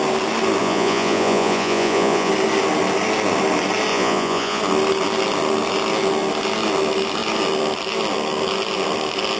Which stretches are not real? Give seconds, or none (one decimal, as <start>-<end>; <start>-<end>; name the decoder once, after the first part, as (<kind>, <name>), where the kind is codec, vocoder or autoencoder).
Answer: 0.6-2.3 (vocoder, Vocos); 3.9-4.6